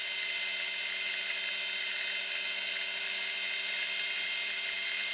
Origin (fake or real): real